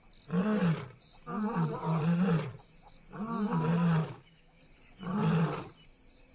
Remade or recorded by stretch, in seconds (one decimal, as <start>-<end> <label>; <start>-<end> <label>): 0.0-4.0 recorded; 4.0-4.6 remade; 4.6-6.3 recorded